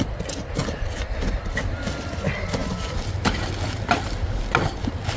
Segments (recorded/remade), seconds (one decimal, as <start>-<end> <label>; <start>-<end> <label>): 0.0-2.6 recorded; 2.6-3.5 remade; 3.5-5.2 recorded